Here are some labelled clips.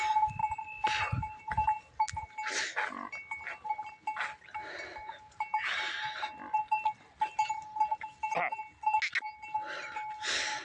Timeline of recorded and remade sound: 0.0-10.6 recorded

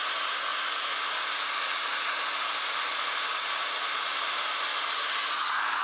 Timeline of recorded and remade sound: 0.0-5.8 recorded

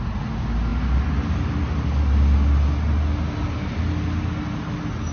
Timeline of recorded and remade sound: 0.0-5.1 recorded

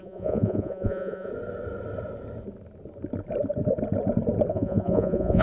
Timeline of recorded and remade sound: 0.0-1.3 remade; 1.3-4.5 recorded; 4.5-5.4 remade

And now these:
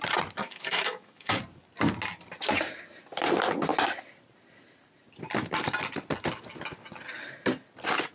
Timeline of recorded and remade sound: 0.0-0.4 recorded; 0.4-1.4 remade; 1.4-8.1 recorded